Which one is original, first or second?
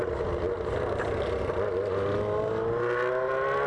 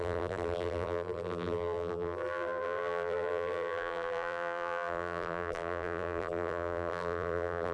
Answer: first